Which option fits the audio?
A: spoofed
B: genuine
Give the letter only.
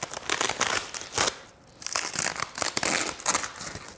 B